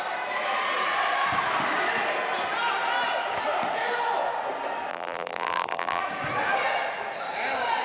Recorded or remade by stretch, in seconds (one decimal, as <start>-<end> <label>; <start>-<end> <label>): 0.0-4.9 recorded; 4.9-6.0 remade; 6.0-7.8 recorded